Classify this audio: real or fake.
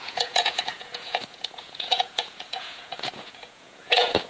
fake